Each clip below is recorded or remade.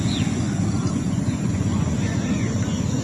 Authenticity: remade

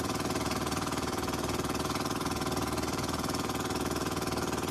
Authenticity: remade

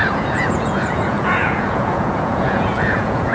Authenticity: remade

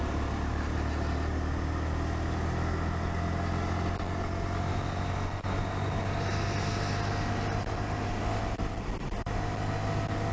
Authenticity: recorded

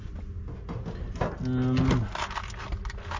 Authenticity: recorded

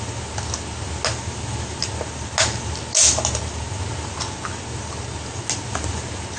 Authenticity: recorded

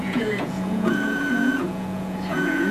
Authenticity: remade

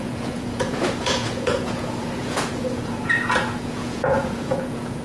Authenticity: remade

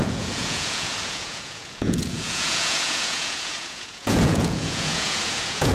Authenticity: remade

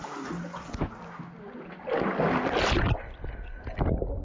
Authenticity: recorded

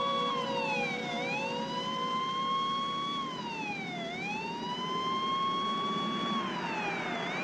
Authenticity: recorded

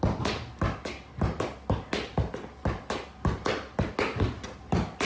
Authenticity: recorded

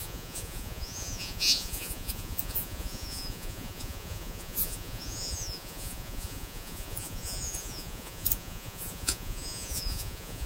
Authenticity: remade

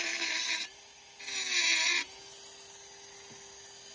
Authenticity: recorded